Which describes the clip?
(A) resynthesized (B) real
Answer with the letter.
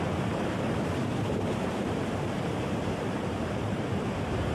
A